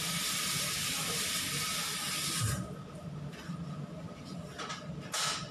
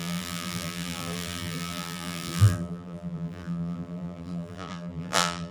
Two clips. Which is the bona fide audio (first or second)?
first